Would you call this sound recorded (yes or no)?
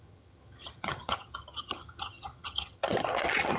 no